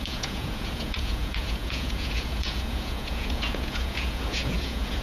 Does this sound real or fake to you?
fake